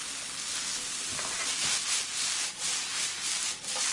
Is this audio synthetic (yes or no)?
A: no